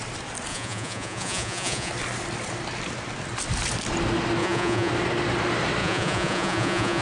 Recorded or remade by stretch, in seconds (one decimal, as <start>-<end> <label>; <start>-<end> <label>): 0.0-0.5 recorded; 0.5-1.9 remade; 1.9-4.4 recorded; 4.4-4.9 remade; 4.9-5.8 recorded; 5.8-7.0 remade